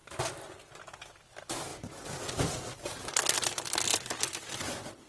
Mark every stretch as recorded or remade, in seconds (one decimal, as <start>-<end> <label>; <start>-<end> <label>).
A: 0.0-1.7 recorded; 1.7-5.1 remade